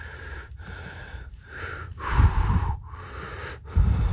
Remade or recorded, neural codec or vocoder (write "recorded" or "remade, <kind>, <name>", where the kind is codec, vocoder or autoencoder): remade, vocoder, BigVGAN v2